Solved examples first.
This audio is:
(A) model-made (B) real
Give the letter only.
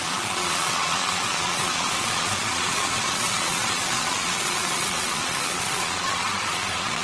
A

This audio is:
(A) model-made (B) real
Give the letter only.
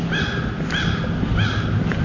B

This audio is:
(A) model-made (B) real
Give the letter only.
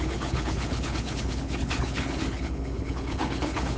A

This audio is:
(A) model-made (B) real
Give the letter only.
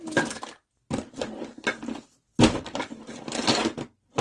B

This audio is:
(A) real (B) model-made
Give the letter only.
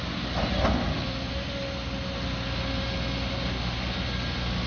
A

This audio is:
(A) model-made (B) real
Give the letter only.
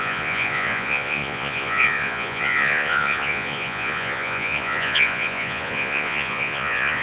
A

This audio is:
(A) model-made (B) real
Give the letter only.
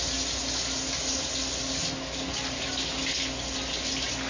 B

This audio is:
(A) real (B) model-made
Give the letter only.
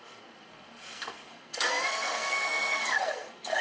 B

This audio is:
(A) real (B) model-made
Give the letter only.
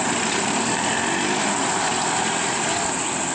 A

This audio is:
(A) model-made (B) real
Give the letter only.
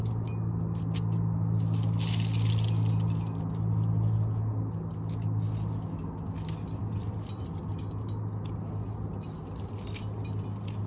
B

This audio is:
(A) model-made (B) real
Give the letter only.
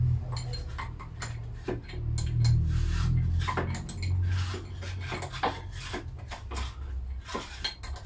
B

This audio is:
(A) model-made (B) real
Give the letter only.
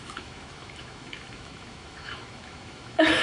A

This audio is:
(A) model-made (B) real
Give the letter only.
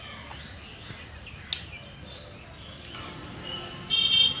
B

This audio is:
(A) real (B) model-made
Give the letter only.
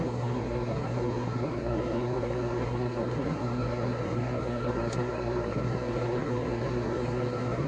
B